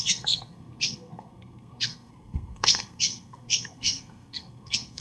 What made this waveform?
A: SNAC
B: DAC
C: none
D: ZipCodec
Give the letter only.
A